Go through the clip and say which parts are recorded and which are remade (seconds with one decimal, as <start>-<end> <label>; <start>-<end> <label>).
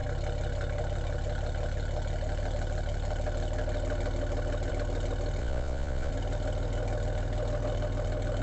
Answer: 0.0-5.4 recorded; 5.4-6.1 remade; 6.1-8.4 recorded